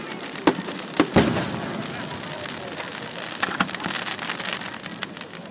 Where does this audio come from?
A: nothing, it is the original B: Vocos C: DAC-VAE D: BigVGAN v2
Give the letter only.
A